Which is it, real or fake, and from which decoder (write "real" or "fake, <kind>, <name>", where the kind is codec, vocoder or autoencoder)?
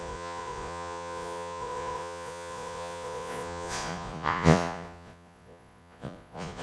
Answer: fake, vocoder, Vocos